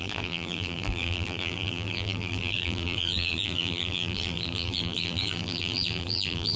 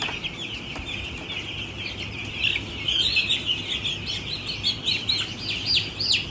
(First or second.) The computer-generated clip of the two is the first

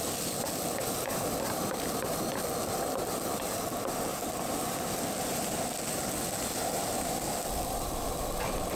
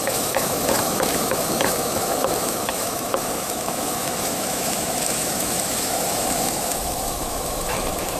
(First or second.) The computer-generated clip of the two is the second